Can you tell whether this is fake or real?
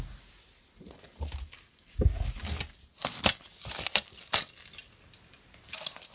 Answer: real